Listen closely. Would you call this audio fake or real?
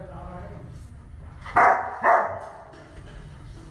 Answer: real